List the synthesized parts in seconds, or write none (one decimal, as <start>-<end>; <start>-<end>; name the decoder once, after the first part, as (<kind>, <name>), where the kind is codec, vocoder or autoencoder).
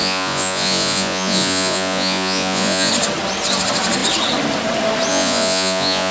0.0-2.9 (vocoder, Vocos); 5.1-6.1